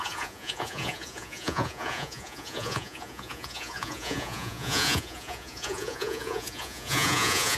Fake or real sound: fake